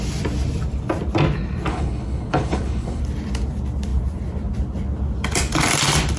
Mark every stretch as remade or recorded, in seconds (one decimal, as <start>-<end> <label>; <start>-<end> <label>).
0.0-1.7 recorded; 1.7-3.0 remade; 3.0-6.2 recorded

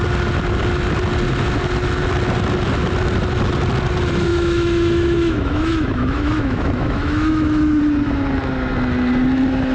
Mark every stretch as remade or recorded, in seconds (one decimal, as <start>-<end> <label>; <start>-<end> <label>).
0.0-4.3 recorded; 4.3-7.8 remade; 7.8-9.7 recorded

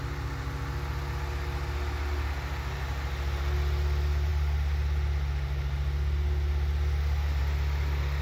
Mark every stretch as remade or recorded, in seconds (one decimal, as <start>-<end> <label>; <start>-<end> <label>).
0.0-8.2 recorded

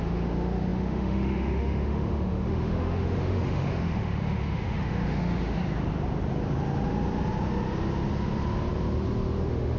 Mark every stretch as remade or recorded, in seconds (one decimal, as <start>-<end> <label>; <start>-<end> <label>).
0.0-5.6 remade; 5.6-9.4 recorded; 9.4-9.8 remade

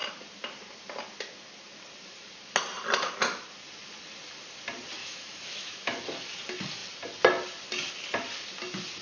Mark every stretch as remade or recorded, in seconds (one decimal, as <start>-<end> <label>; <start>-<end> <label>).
0.0-5.0 recorded; 5.0-6.0 remade; 6.0-9.0 recorded

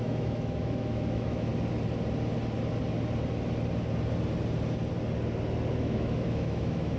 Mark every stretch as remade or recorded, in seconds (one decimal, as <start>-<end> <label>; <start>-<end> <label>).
0.0-1.5 remade; 1.5-5.7 recorded; 5.7-7.0 remade

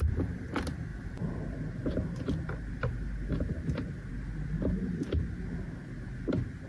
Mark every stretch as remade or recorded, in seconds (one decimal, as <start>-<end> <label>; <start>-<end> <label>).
0.0-0.9 recorded; 0.9-4.1 remade; 4.1-6.7 recorded

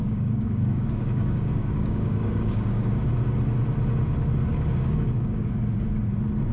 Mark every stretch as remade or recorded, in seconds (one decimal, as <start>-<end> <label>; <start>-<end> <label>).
0.0-3.0 remade; 3.0-4.5 recorded; 4.5-5.5 remade; 5.5-6.5 recorded